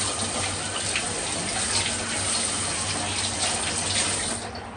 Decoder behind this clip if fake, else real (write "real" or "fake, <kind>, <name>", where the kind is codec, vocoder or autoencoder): real